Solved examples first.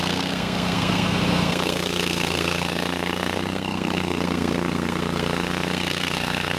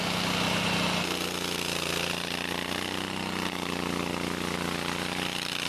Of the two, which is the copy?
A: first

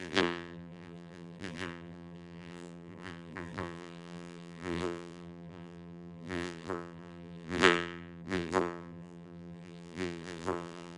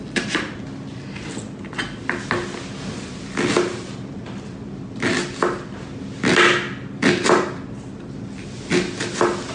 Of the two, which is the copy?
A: first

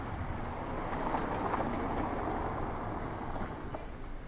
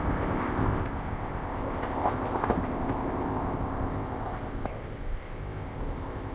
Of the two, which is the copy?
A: second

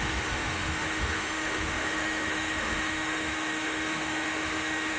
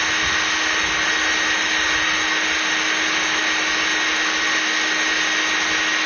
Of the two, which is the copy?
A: first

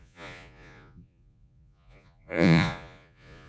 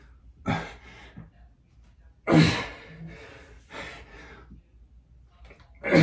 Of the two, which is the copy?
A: first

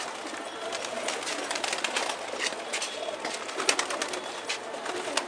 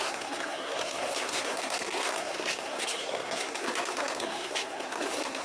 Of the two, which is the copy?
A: second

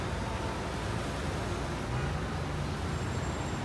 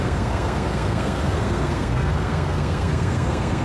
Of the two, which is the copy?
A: second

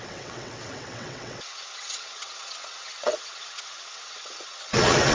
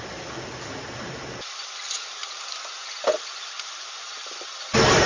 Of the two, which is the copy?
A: first